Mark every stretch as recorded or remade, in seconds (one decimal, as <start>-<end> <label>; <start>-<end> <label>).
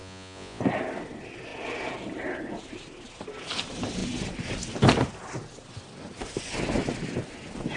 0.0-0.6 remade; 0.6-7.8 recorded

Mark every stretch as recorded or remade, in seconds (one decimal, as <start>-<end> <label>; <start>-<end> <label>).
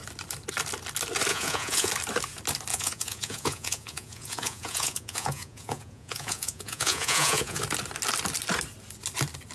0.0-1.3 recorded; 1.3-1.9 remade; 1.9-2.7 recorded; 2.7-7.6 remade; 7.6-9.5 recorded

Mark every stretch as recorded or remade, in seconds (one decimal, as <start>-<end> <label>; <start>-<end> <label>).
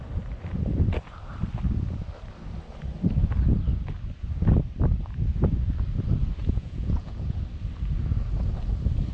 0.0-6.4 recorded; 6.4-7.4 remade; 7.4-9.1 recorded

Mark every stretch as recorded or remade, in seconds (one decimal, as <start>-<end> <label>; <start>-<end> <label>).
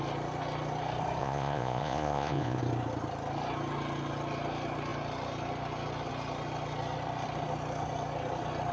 0.0-1.2 recorded; 1.2-2.6 remade; 2.6-8.7 recorded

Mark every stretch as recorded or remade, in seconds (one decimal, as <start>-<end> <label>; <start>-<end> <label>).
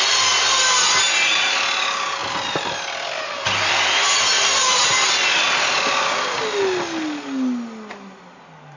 0.0-8.8 recorded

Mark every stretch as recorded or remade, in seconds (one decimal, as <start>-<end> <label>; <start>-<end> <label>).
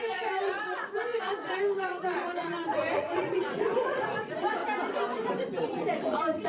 0.0-4.6 remade; 4.6-5.6 recorded; 5.6-6.5 remade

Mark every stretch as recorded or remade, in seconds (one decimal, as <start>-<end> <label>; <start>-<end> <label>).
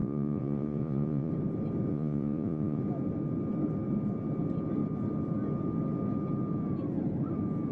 0.0-1.3 remade; 1.3-1.9 recorded; 1.9-2.8 remade; 2.8-7.7 recorded